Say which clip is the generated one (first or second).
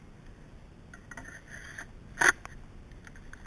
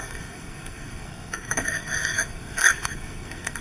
second